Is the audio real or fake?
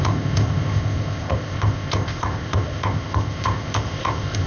fake